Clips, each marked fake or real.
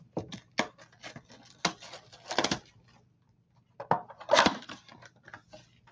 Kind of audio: real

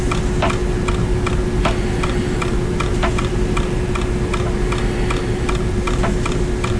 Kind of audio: real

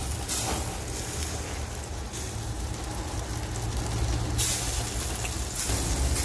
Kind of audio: real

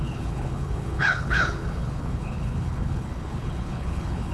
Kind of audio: fake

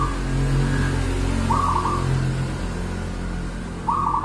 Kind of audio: real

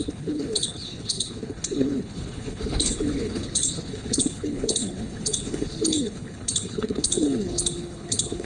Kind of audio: fake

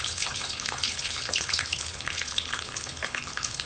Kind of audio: fake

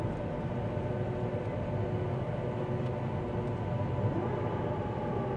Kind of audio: real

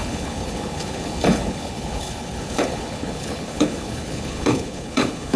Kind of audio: fake